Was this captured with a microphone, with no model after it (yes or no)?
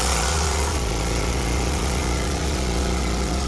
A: no